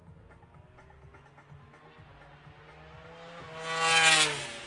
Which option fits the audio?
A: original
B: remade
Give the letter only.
A